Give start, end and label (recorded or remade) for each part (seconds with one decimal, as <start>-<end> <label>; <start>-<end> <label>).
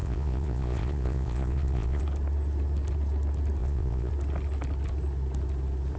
0.0-2.0 remade; 2.0-3.6 recorded; 3.6-4.1 remade; 4.1-6.0 recorded